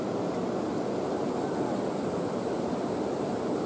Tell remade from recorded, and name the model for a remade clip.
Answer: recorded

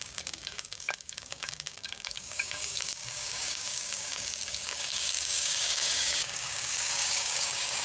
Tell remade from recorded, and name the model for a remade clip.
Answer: remade, codec, DAC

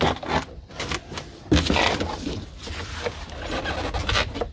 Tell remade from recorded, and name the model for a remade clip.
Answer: recorded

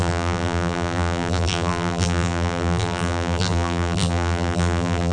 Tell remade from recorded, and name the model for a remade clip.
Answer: remade, vocoder, BigVGAN v2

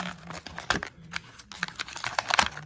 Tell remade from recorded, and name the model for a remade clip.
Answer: recorded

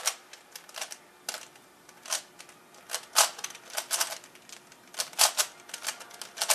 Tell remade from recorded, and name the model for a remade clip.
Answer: recorded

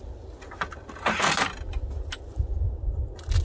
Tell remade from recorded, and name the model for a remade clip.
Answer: recorded